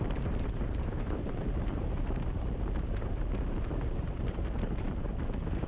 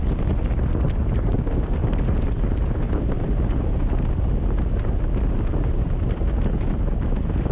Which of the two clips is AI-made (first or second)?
first